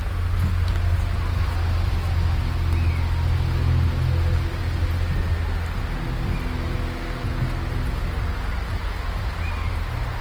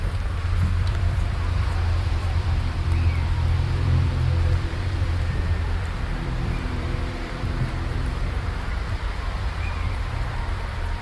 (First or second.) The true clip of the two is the first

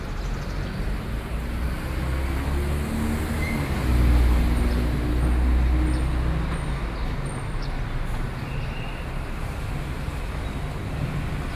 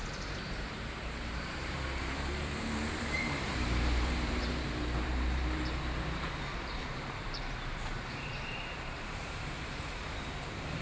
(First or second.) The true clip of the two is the first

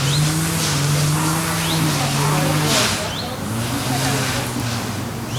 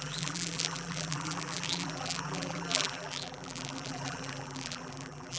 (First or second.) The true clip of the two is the first